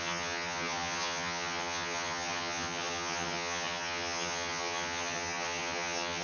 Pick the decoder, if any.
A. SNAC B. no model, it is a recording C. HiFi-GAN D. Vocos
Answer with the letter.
C